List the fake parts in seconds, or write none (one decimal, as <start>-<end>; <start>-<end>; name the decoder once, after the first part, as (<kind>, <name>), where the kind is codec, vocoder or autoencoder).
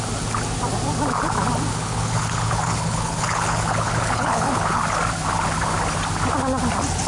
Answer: 1.7-4.8 (codec, HILCodec)